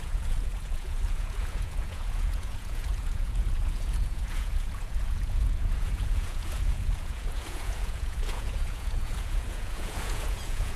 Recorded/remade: remade